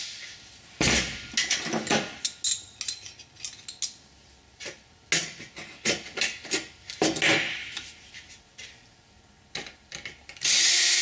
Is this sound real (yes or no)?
yes